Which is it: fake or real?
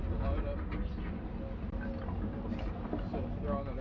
real